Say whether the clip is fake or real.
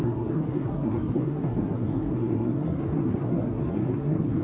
fake